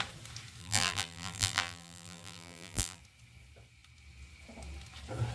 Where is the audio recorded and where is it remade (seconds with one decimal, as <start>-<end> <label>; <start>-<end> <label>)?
0.0-0.6 recorded; 0.6-3.0 remade; 3.0-5.3 recorded